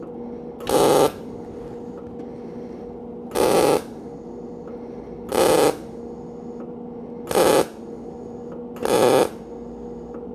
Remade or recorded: recorded